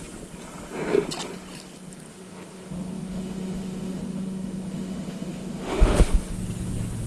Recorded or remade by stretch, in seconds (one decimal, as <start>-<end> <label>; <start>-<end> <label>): 0.0-2.1 recorded; 2.1-6.3 remade; 6.3-7.1 recorded